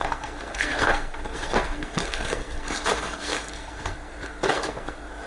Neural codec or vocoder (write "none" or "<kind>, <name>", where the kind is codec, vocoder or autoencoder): codec, SNAC